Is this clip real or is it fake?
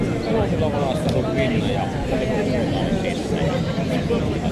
real